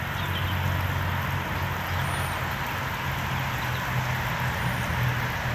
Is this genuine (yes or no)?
yes